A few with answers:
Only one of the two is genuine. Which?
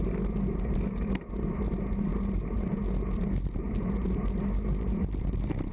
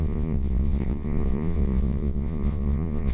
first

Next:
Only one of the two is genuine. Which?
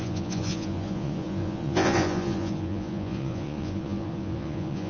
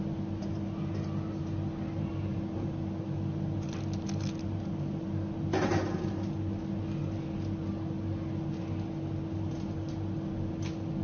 second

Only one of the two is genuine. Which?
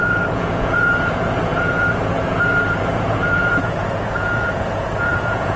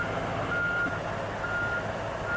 second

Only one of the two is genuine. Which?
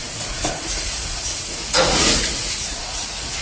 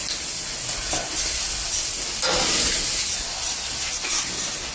second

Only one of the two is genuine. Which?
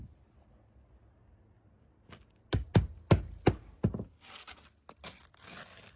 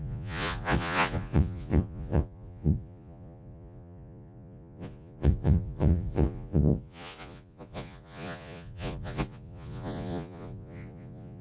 first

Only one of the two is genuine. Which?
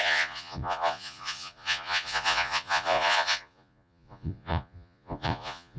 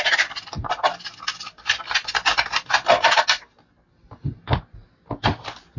second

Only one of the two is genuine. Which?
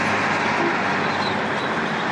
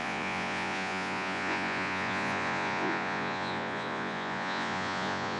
first